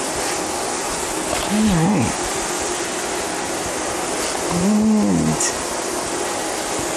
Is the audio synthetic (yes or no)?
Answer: no